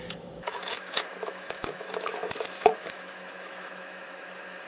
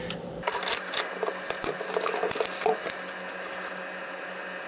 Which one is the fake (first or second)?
first